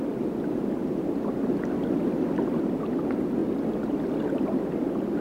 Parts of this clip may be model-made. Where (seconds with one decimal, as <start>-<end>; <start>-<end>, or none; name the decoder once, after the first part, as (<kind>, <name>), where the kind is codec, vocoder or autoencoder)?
3.4-5.2 (vocoder, BigVGAN v2)

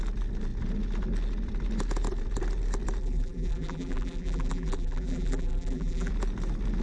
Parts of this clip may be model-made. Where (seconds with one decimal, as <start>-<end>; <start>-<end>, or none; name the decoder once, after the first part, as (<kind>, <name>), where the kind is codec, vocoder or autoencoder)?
3.0-6.1 (vocoder, BigVGAN v2)